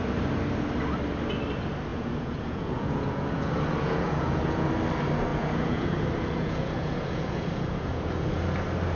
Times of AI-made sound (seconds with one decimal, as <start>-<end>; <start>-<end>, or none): 1.9-4.7; 5.3-8.4